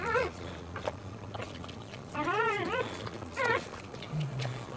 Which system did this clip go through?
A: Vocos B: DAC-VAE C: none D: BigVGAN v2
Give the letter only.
A